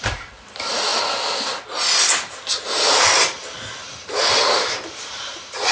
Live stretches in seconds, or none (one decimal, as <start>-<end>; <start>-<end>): 0.0-5.7